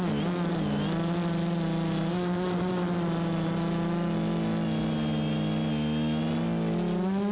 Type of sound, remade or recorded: recorded